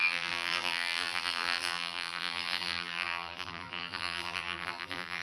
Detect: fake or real fake